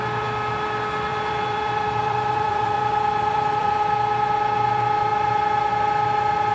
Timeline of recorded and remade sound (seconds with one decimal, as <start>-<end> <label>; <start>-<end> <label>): 0.0-1.1 recorded; 1.1-3.8 remade; 3.8-6.5 recorded